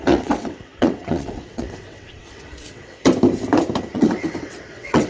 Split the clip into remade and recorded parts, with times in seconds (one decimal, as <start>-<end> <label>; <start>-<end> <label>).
0.0-3.0 remade; 3.0-3.9 recorded; 3.9-5.1 remade